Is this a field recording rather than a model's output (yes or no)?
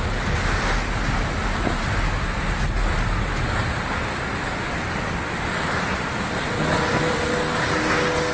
yes